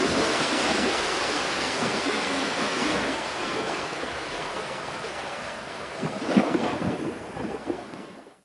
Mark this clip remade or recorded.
remade